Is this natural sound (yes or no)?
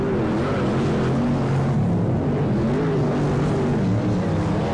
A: yes